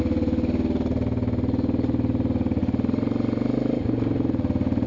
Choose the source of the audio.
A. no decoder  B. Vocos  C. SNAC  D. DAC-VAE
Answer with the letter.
A